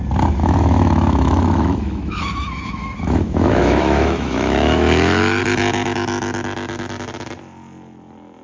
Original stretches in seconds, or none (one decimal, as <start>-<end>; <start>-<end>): 0.0-0.4; 5.4-8.4